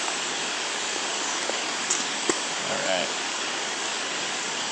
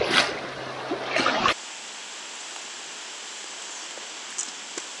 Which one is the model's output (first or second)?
first